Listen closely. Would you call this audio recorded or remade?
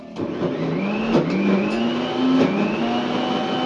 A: recorded